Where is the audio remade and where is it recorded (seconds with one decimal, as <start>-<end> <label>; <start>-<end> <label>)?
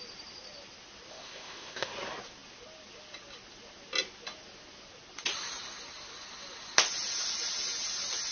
0.0-1.1 recorded; 1.1-1.9 remade; 1.9-8.3 recorded